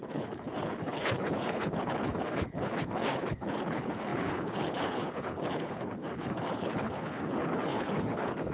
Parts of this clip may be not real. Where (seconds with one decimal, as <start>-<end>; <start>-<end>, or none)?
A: 0.0-8.5